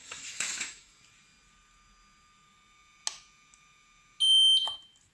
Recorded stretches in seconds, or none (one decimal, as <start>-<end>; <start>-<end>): 1.0-5.1